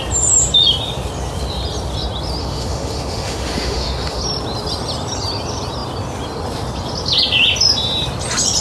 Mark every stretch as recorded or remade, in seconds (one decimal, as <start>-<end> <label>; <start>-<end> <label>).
0.0-2.4 recorded; 2.4-4.2 remade; 4.2-8.6 recorded